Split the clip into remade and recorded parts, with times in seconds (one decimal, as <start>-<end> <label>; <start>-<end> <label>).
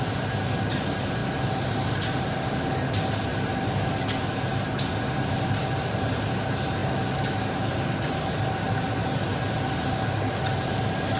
0.0-11.2 recorded